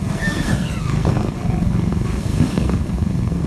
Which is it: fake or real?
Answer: fake